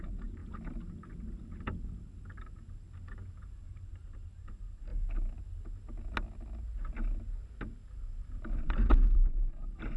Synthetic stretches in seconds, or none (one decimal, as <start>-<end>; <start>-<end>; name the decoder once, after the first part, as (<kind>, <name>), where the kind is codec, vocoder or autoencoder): 0.0-0.4 (vocoder, BigVGAN v2); 3.6-4.9; 8.6-10.0

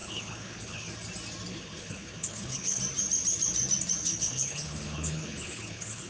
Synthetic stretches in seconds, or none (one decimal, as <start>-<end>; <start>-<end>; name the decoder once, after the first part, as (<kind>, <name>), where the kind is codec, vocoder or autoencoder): 0.0-0.9 (codec, HILCodec); 1.5-2.8; 4.0-6.1

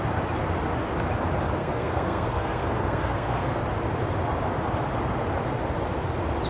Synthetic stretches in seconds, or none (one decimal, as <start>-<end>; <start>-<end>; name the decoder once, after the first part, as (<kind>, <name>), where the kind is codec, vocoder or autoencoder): 1.6-3.6 (codec, SNAC)

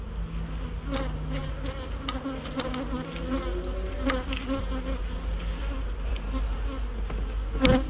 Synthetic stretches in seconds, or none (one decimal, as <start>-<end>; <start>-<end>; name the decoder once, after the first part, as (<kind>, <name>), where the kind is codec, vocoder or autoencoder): none

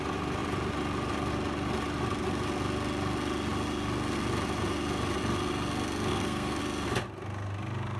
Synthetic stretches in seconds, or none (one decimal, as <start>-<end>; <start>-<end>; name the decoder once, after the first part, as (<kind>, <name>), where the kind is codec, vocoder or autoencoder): 6.1-6.6 (codec, SNAC)